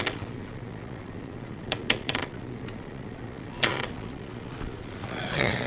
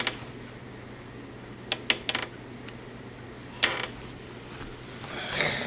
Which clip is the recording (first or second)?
second